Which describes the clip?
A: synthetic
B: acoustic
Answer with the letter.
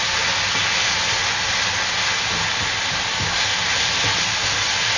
B